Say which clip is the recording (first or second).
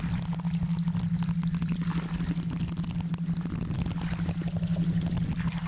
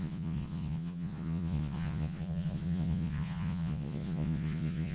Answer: first